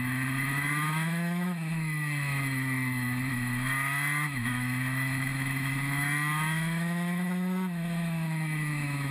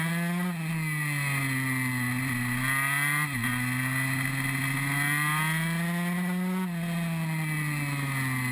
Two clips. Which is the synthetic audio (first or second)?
first